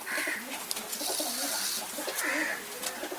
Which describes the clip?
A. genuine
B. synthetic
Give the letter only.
A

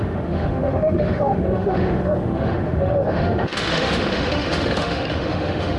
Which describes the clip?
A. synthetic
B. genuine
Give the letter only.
A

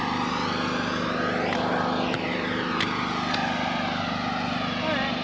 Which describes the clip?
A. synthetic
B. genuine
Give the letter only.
B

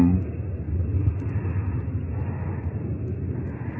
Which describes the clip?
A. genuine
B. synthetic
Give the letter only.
A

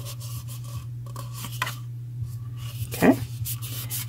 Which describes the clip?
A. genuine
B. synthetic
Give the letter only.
A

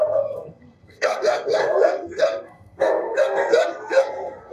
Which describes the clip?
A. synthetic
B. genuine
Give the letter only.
A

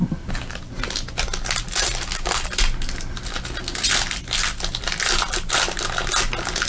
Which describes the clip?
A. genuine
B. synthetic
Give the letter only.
A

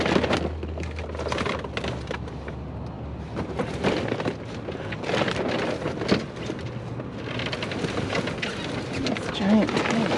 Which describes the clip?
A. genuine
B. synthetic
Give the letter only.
A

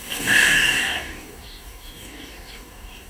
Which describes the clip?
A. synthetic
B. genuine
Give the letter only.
A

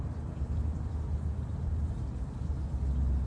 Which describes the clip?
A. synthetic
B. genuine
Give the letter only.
B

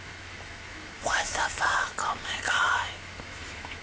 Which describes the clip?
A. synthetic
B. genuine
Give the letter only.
A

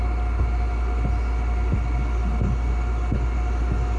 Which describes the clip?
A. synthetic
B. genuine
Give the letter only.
B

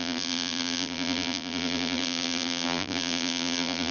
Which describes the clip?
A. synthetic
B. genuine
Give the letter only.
A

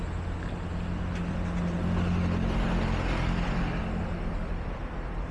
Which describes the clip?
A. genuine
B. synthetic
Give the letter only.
A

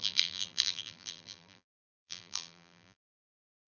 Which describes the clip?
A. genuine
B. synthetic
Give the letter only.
B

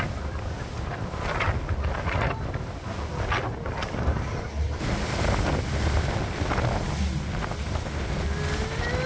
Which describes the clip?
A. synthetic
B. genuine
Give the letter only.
B